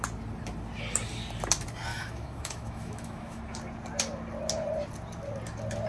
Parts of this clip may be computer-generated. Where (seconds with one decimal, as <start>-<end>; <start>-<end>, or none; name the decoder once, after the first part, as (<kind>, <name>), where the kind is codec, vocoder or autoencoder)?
1.9-3.4 (autoencoder, DAC-VAE)